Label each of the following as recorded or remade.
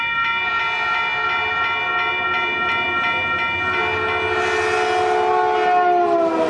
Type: recorded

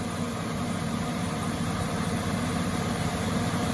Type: remade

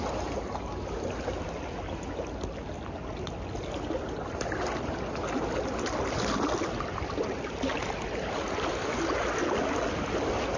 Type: recorded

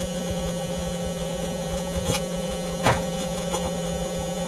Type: remade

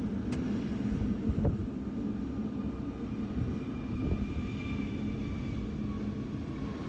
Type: recorded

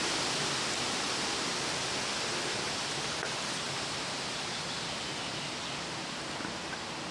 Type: recorded